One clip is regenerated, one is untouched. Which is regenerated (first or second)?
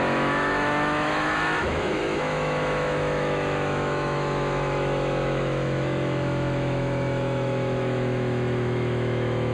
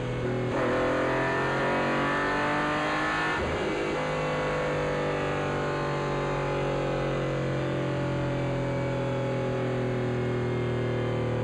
first